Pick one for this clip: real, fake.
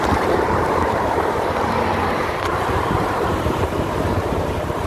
fake